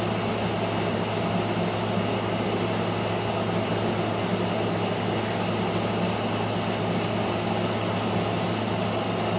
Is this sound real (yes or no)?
yes